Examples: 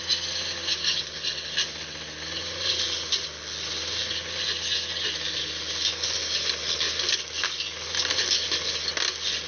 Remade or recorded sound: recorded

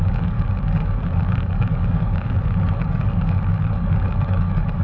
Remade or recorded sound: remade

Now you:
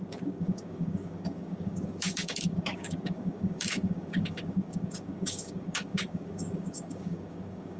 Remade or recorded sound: remade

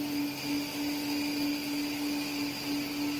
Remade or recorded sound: recorded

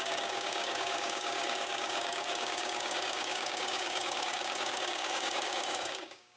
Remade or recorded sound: remade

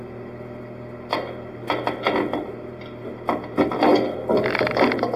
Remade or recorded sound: recorded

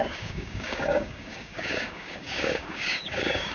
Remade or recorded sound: remade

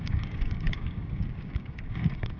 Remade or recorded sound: remade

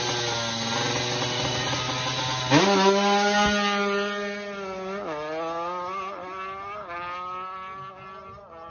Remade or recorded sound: recorded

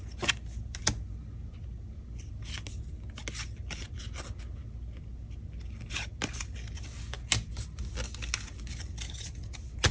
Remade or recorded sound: recorded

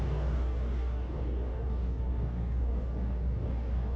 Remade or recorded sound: remade